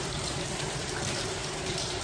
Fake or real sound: fake